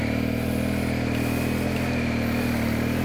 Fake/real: real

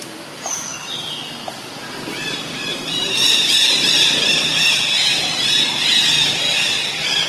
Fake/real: fake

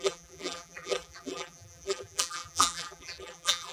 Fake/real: fake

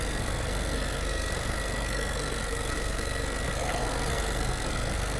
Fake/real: fake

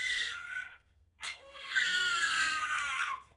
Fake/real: fake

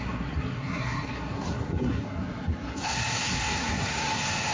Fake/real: fake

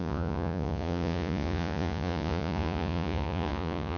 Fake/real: fake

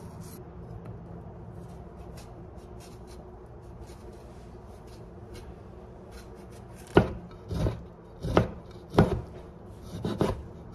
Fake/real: real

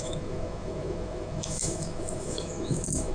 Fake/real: fake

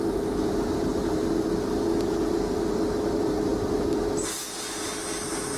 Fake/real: real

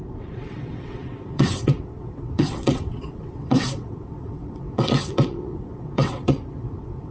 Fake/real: fake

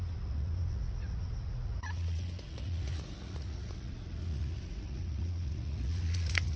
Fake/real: fake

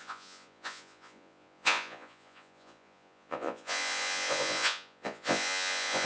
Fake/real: fake